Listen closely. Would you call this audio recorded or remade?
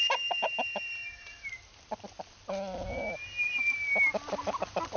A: recorded